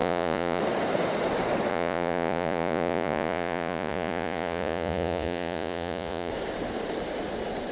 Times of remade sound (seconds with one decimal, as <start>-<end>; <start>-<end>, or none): 0.0-0.6; 1.7-6.3